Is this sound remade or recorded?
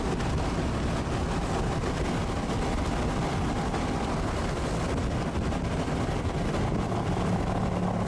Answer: recorded